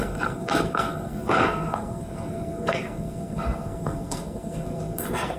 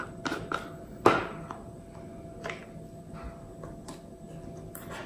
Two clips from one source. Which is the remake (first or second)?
first